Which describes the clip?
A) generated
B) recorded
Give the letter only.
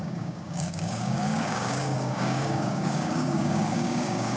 A